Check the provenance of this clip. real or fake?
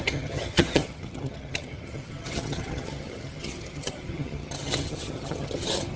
fake